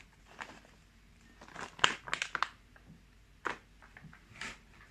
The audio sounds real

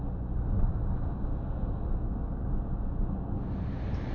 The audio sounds real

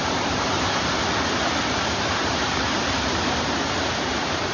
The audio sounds real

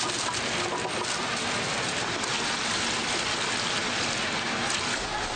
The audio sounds real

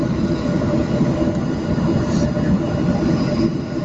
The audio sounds real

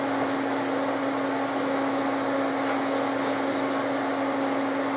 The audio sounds real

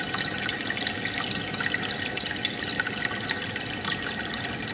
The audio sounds real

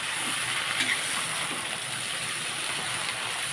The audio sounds fake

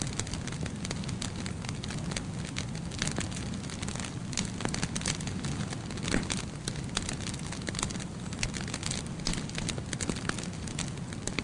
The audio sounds real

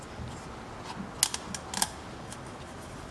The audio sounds real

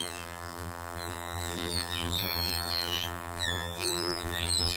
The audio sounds fake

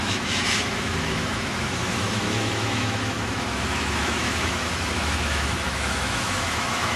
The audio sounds fake